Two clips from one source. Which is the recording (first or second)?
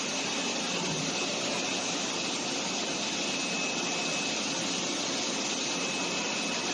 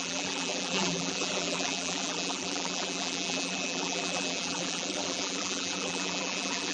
first